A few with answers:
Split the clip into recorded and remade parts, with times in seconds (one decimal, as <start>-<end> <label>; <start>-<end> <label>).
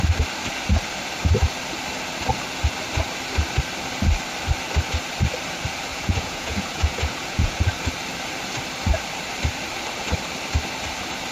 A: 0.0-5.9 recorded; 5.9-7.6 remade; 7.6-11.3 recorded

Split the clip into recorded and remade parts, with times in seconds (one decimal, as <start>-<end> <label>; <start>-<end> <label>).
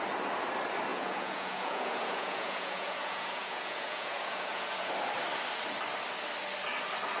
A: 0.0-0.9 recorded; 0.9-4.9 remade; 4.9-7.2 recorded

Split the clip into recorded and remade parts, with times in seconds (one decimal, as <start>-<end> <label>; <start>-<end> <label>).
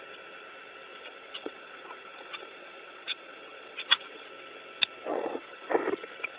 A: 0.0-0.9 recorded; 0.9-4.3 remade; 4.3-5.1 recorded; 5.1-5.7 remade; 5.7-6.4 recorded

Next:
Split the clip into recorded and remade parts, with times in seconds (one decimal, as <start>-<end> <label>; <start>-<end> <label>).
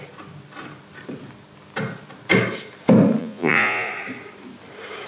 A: 0.0-3.2 recorded; 3.2-3.9 remade; 3.9-5.1 recorded